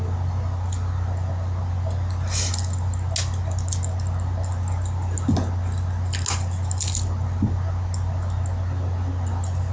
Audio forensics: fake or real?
real